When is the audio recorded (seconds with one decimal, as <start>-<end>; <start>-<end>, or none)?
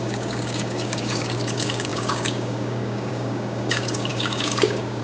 none